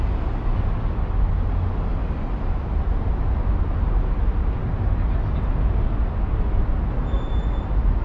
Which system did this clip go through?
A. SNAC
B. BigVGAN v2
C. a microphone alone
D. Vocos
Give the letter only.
C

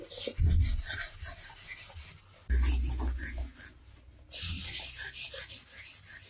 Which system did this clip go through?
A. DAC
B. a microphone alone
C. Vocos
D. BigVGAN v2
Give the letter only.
B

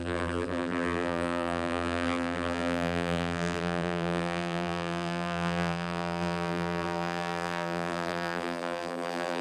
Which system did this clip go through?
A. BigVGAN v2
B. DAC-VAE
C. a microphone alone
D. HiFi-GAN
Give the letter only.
A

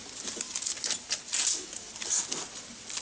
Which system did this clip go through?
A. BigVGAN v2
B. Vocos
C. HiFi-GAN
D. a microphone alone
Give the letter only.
D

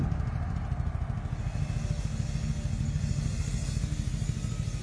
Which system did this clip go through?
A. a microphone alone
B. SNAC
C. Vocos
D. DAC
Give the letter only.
A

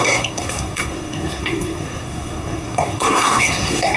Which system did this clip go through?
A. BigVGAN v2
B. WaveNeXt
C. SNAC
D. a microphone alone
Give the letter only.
C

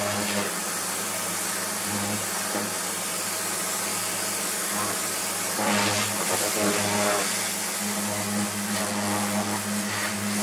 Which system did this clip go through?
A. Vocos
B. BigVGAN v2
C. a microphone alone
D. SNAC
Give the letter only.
C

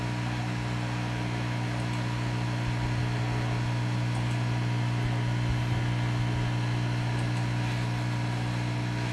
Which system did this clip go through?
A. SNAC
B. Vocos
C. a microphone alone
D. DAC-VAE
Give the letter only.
C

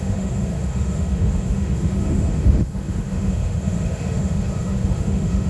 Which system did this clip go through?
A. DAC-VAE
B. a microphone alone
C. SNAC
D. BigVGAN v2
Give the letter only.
A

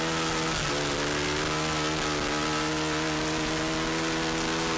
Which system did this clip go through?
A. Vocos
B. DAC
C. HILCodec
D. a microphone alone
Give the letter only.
D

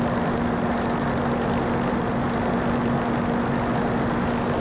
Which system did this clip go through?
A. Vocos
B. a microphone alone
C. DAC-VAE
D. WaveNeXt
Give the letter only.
B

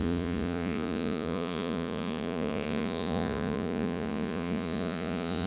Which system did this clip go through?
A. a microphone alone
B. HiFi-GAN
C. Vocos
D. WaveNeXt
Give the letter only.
C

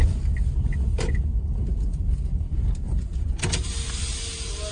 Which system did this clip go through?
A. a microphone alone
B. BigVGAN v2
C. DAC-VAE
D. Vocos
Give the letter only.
A